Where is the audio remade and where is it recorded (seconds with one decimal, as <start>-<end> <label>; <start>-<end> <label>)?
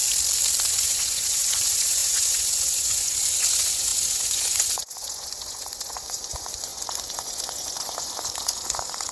0.0-0.7 recorded; 0.7-9.1 remade